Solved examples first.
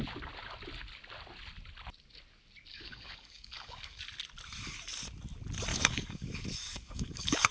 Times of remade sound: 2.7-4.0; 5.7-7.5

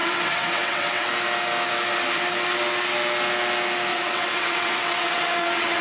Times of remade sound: 0.0-1.1; 3.9-5.8

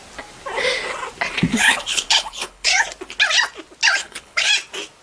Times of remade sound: 1.5-2.7; 4.0-4.5

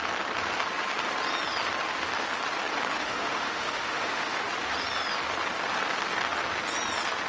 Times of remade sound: 2.9-4.5

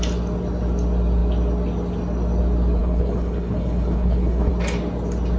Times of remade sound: 2.8-4.5

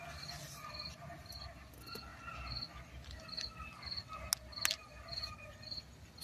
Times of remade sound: none

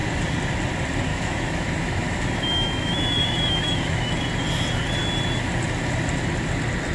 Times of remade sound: 1.1-4.2

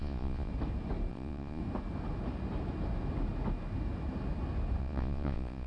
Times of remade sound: 0.0-0.5; 1.1-1.6; 4.8-5.7